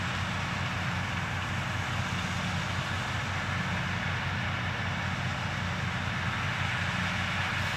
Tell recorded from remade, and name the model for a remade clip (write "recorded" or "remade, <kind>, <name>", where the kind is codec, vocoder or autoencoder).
recorded